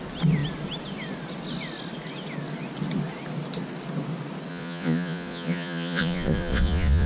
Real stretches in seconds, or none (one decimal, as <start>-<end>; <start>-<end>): 0.0-4.5